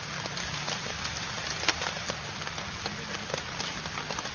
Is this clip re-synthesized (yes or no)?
no